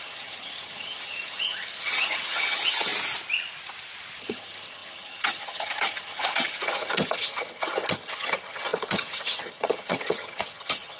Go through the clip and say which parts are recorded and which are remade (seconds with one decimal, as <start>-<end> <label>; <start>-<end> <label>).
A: 0.0-2.9 remade; 2.9-4.2 recorded; 4.2-11.0 remade

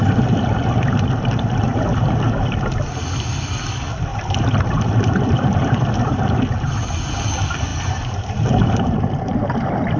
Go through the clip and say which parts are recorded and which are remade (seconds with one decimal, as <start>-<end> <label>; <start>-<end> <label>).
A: 0.0-4.1 recorded; 4.1-6.2 remade; 6.2-7.7 recorded; 7.7-8.3 remade; 8.3-10.0 recorded

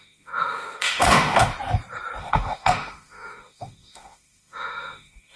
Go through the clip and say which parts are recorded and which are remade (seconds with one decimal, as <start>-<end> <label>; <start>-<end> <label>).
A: 0.0-1.5 remade; 1.5-2.2 recorded; 2.2-5.4 remade

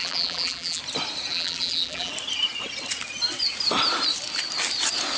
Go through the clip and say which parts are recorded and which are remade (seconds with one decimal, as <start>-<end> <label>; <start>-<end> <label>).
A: 0.0-0.8 remade; 0.8-1.3 recorded; 1.3-2.1 remade; 2.1-5.2 recorded

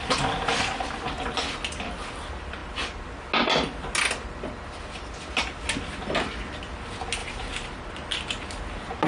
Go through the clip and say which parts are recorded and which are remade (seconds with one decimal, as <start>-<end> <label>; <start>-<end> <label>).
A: 0.0-7.2 recorded; 7.2-7.9 remade; 7.9-9.1 recorded

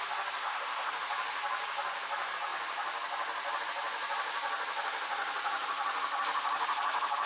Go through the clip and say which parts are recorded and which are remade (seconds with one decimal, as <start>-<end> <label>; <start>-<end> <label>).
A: 0.0-0.4 recorded; 0.4-0.9 remade; 0.9-7.3 recorded

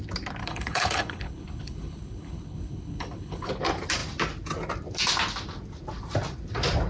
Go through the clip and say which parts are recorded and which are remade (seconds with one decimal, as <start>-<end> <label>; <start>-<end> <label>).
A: 0.0-0.4 recorded; 0.4-3.5 remade; 3.5-6.9 recorded